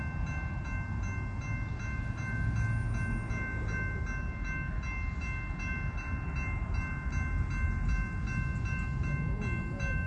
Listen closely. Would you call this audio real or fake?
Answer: real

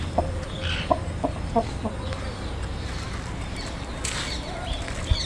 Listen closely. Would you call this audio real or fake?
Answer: real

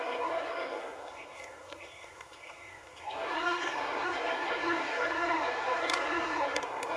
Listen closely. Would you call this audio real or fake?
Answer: fake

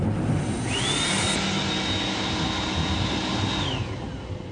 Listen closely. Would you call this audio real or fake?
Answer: real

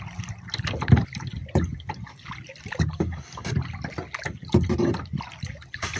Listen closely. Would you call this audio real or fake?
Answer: real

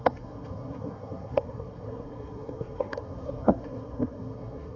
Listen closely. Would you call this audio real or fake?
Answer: fake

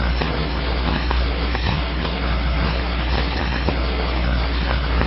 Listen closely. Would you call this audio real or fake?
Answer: fake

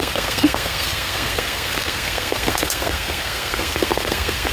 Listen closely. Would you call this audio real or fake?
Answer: fake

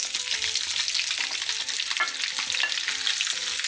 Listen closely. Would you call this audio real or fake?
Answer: real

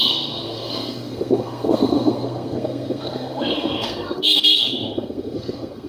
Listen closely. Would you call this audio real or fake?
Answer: fake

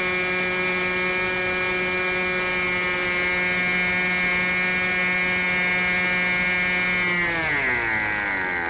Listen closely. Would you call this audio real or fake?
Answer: real